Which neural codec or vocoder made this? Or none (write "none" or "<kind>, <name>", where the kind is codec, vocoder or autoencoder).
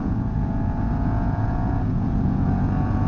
vocoder, Vocos